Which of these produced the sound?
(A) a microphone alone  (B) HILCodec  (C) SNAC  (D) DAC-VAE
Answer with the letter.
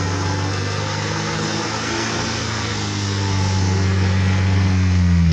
C